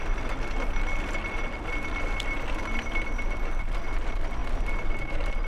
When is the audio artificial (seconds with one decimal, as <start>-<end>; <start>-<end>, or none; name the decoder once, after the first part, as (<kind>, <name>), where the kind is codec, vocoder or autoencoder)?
none